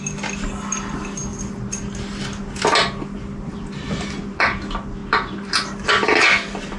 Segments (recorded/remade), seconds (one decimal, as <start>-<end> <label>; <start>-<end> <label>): 0.0-6.8 recorded